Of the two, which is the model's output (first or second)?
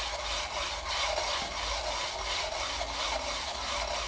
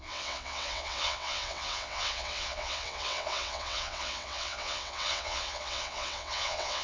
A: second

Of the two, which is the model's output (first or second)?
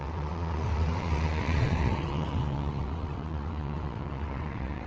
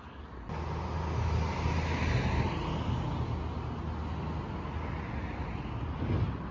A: first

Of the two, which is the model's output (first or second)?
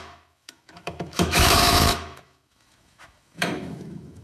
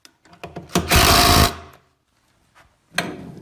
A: first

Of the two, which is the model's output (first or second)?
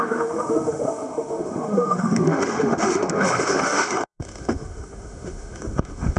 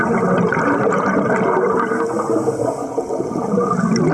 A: first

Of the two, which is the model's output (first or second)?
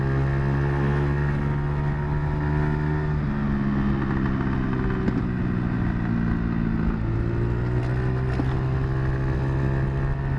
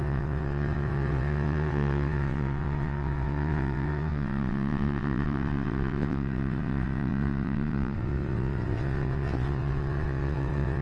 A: second